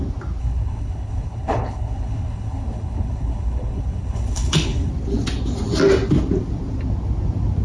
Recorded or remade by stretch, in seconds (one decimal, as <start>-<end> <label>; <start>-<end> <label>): 0.0-0.4 recorded; 0.4-4.9 remade; 4.9-7.6 recorded